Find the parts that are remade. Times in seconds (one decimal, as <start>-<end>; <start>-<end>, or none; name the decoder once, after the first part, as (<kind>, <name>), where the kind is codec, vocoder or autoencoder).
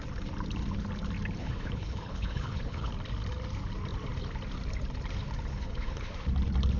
1.4-2.9 (codec, HILCodec); 5.5-6.1